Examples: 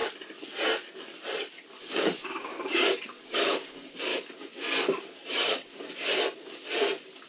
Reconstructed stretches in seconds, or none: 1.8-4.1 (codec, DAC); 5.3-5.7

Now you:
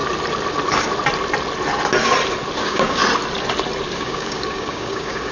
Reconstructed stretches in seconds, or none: 2.6-3.0 (codec, DAC); 3.9-5.3

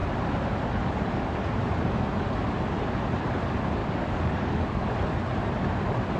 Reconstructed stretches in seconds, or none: 3.8-4.9 (codec, DAC)

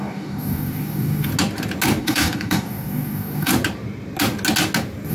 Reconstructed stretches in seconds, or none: 0.0-1.3 (codec, DAC); 2.0-3.5

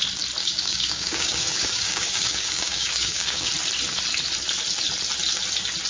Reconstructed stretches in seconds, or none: 0.4-3.5 (codec, DAC)